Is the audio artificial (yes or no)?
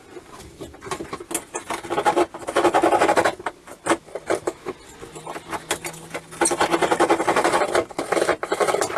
no